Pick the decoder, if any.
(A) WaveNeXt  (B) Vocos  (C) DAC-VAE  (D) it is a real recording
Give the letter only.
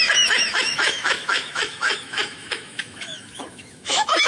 C